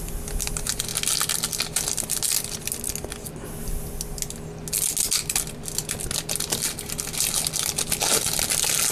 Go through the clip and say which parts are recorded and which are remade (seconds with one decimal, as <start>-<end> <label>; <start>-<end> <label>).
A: 0.0-8.9 recorded